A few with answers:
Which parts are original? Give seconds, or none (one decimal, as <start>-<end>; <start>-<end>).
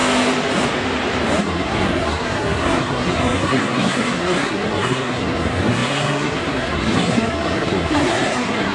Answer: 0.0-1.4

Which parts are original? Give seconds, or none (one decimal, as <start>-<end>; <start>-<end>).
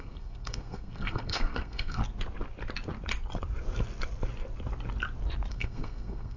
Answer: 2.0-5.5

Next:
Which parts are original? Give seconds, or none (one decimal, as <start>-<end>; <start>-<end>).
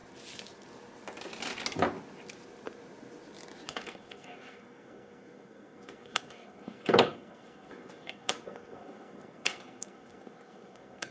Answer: 0.0-3.7